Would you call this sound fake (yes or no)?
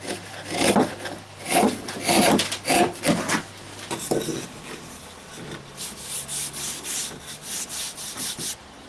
no